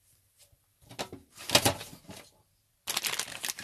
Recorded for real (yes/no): yes